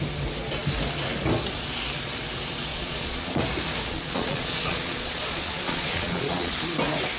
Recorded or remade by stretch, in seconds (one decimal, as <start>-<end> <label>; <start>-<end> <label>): 0.0-2.7 recorded; 2.7-3.4 remade; 3.4-3.9 recorded; 3.9-6.6 remade; 6.6-7.2 recorded

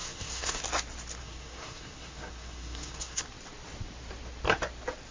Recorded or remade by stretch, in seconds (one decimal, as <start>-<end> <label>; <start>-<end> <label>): 0.0-0.6 remade; 0.6-1.2 recorded; 1.2-3.2 remade; 3.2-5.1 recorded

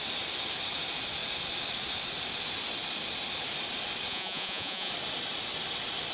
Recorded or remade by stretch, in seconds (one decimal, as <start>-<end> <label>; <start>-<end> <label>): 0.0-4.1 recorded; 4.1-4.9 remade; 4.9-6.1 recorded

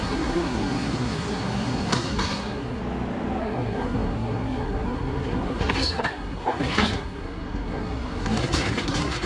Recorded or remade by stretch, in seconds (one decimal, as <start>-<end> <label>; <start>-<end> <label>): 0.0-2.8 remade; 2.8-3.4 recorded; 3.4-9.3 remade